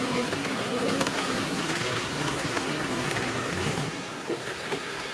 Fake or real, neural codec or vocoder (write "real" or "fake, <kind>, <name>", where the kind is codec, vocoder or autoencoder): fake, codec, SNAC